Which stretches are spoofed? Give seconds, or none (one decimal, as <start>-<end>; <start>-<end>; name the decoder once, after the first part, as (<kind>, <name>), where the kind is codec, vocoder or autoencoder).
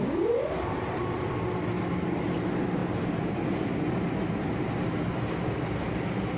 none